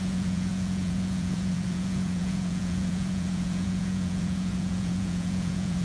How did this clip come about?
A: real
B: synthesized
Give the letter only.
B